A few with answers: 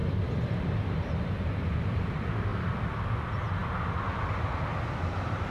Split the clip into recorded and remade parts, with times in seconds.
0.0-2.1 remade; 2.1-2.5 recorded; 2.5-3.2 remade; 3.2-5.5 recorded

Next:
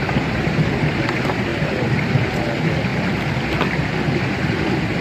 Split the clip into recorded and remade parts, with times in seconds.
0.0-1.5 recorded; 1.5-2.4 remade; 2.4-5.0 recorded

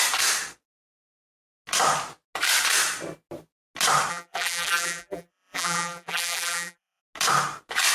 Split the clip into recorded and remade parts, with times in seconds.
0.0-4.1 recorded; 4.1-7.0 remade; 7.0-7.9 recorded

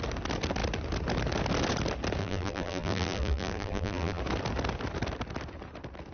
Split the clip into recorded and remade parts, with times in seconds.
0.0-2.2 recorded; 2.2-4.2 remade; 4.2-6.1 recorded

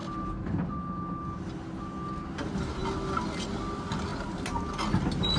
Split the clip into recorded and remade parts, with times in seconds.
0.0-5.4 recorded